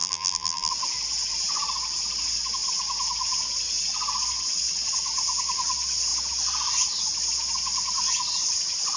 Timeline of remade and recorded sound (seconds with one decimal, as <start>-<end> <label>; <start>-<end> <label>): 0.0-0.7 remade; 0.7-9.0 recorded